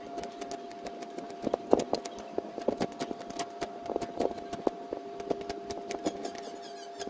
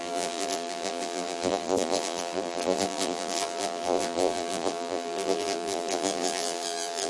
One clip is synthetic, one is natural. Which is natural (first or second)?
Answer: first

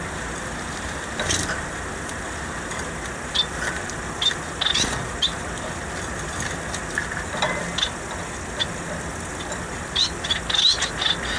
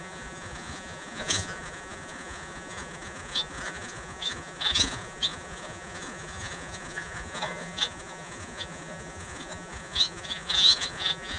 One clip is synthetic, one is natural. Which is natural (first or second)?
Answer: first